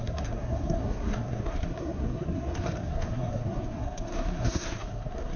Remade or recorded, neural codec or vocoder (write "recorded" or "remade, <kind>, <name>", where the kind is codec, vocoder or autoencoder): remade, codec, SNAC